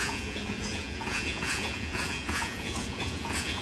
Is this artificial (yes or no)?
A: yes